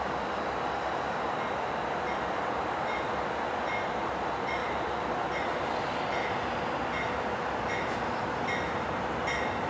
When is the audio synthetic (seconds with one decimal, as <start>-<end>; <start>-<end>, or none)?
none